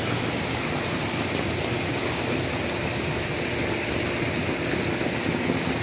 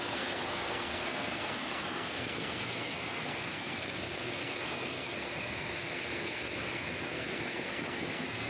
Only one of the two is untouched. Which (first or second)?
first